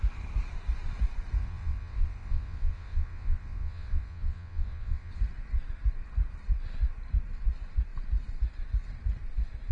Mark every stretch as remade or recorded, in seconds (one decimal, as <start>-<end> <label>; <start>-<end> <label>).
0.0-1.4 recorded; 1.4-5.1 remade; 5.1-9.7 recorded